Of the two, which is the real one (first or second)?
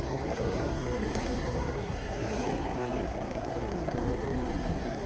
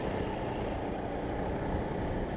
second